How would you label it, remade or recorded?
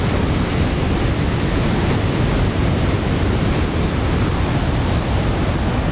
recorded